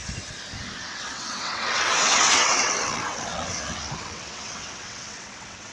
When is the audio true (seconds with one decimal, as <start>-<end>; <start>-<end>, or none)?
0.0-0.8